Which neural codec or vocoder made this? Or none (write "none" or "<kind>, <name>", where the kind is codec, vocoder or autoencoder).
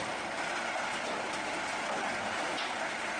none